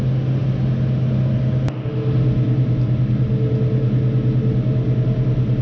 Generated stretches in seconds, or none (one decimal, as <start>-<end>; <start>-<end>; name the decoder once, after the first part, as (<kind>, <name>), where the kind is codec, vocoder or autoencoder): none